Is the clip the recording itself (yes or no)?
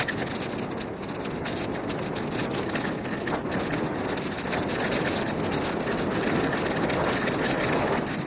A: yes